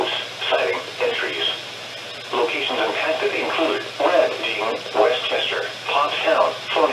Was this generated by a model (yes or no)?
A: no